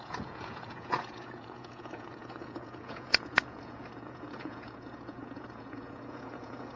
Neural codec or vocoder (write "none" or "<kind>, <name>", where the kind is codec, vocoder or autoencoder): vocoder, Vocos